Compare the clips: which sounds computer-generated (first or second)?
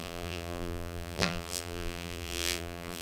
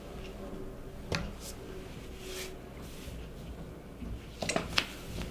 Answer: first